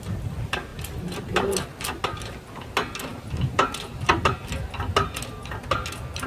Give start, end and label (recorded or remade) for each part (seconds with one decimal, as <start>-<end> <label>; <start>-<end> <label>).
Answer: 0.0-6.3 recorded